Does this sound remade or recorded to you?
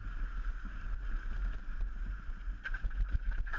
recorded